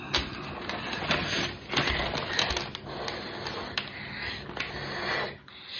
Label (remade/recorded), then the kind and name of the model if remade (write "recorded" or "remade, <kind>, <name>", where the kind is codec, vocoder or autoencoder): recorded